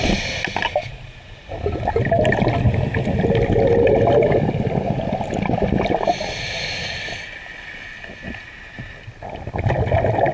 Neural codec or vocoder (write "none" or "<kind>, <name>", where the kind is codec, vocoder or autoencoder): none